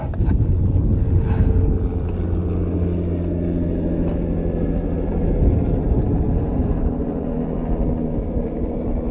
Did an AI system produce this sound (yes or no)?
no